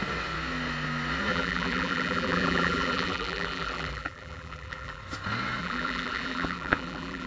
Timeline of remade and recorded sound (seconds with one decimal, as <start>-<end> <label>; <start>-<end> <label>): 0.0-1.3 recorded; 1.3-5.0 remade; 5.0-5.6 recorded; 5.6-7.3 remade